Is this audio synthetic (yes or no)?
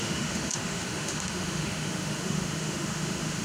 yes